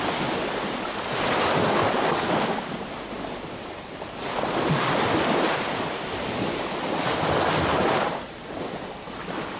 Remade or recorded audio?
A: recorded